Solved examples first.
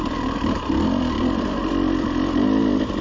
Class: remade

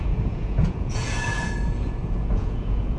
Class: remade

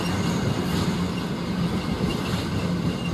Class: recorded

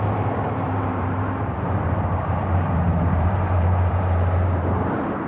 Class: remade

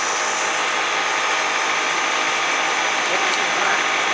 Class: recorded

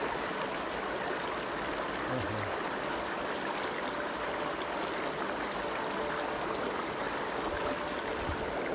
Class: recorded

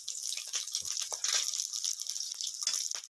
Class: recorded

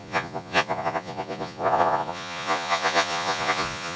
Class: remade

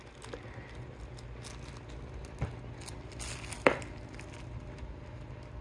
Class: recorded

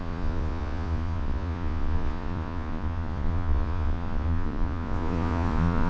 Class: remade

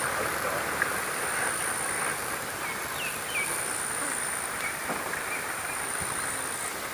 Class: recorded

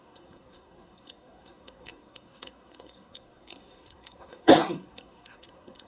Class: remade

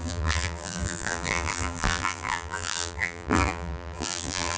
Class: remade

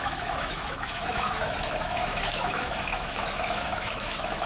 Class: remade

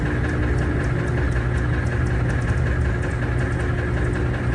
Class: recorded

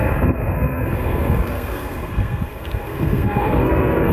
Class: remade